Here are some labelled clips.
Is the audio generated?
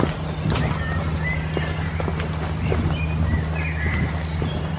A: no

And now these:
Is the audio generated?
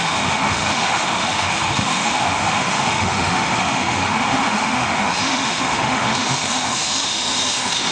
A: yes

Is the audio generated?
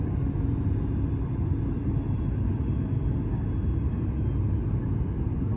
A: no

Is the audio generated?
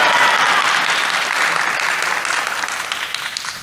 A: no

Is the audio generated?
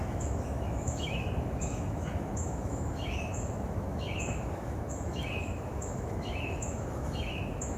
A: yes